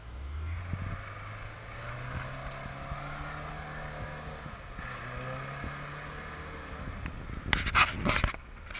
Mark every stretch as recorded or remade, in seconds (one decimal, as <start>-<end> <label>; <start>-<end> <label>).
0.0-0.6 remade; 0.6-8.8 recorded